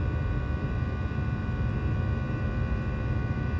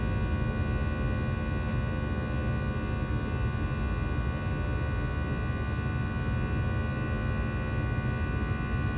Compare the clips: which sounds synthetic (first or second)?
first